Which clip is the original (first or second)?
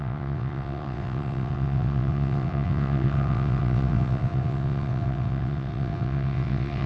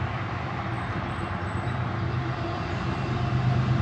second